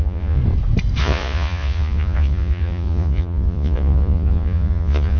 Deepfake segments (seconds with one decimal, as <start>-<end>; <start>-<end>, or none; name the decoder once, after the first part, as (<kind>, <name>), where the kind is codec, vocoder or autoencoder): 0.0-0.4 (vocoder, Vocos); 1.0-5.2